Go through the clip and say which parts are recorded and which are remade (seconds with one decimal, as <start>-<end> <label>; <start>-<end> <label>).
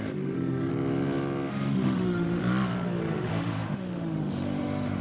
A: 0.0-0.7 remade; 0.7-1.5 recorded; 1.5-2.4 remade; 2.4-3.0 recorded; 3.0-5.0 remade